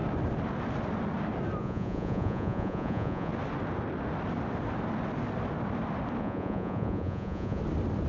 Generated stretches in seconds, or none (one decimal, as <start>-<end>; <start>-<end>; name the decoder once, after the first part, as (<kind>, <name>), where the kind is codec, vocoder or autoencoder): 1.6-3.3 (vocoder, Vocos); 6.2-7.6